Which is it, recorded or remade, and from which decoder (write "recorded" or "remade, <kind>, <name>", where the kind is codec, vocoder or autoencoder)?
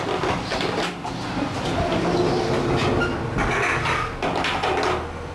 recorded